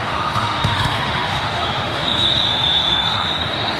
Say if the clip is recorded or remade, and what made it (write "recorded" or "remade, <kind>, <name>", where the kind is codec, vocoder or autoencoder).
remade, autoencoder, DAC-VAE